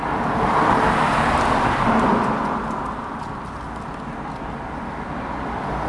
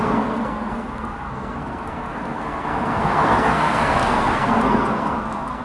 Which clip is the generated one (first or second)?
second